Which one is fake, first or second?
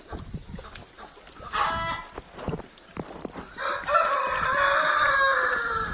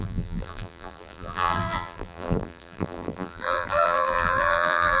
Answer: second